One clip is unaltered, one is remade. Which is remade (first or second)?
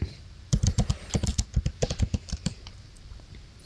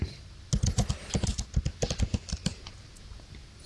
first